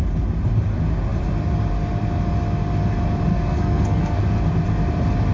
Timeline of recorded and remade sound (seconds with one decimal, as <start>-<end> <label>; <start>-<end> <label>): 0.0-3.3 recorded; 3.3-4.2 remade; 4.2-5.3 recorded